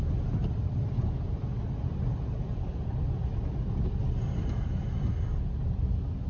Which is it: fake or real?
real